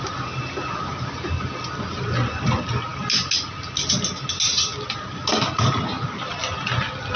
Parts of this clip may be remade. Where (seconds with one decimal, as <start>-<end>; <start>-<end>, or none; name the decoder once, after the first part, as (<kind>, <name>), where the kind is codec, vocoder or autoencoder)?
none